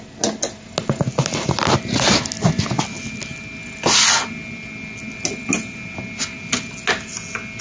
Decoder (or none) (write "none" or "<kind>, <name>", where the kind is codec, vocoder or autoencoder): none